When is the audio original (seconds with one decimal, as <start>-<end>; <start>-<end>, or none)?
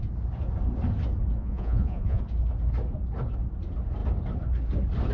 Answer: 0.0-1.4; 2.2-5.1